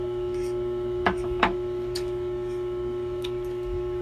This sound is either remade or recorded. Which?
remade